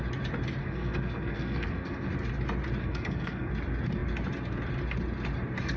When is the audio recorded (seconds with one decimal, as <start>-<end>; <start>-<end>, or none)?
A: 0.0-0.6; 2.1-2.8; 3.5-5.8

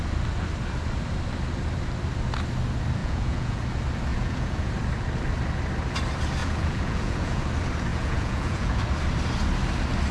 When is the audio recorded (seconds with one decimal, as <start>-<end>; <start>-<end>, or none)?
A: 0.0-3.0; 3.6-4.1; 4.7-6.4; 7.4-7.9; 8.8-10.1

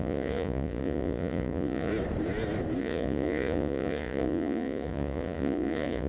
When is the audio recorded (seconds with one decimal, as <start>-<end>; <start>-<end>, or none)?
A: 1.9-2.8